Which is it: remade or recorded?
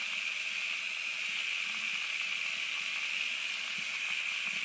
recorded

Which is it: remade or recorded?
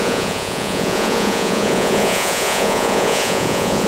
remade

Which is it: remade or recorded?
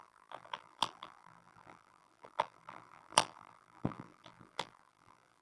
remade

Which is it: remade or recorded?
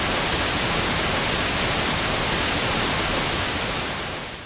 recorded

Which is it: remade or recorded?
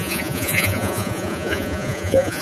remade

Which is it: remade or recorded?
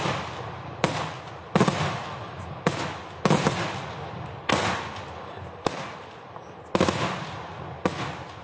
recorded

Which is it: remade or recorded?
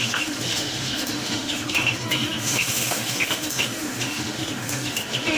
remade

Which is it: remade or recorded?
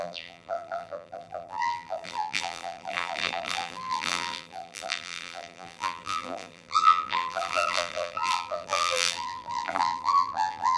remade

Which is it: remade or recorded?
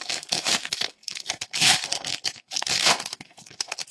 remade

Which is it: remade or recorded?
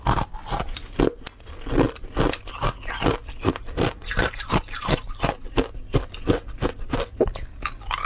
recorded